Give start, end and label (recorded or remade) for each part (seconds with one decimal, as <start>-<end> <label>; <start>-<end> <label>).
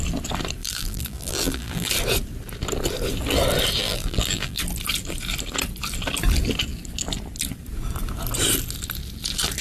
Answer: 0.0-0.6 recorded; 0.6-1.9 remade; 1.9-3.8 recorded; 3.8-4.6 remade; 4.6-9.6 recorded